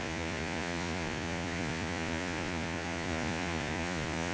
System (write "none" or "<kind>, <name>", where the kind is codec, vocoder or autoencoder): vocoder, Vocos